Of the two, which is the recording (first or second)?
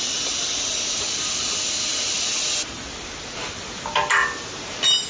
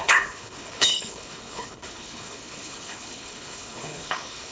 first